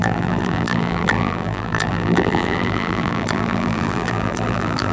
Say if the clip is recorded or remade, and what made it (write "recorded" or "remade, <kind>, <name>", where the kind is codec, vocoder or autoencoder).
remade, vocoder, BigVGAN v2